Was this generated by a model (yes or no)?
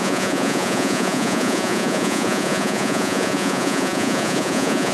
yes